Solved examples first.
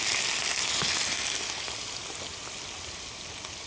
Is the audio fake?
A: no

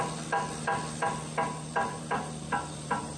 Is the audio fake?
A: no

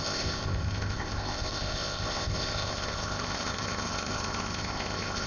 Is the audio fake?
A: yes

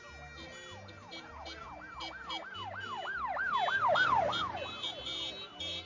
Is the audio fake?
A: no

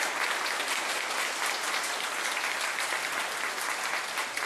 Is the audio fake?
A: no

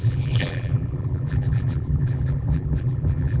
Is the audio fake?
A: yes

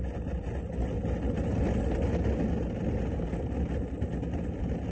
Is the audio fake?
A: no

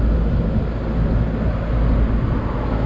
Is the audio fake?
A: no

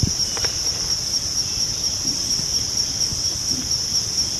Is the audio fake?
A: no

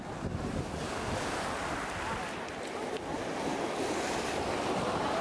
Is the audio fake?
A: no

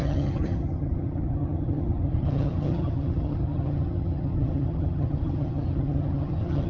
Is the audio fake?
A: yes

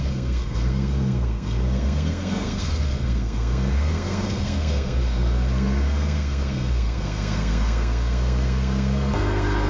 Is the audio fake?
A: yes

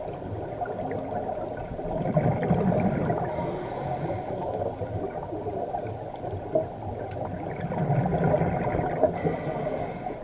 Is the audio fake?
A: no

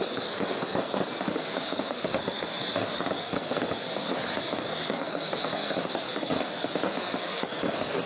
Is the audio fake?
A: yes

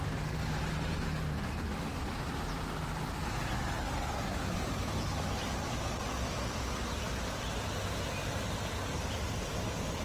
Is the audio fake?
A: no